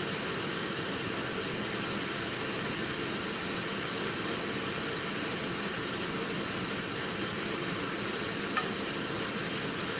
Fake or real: real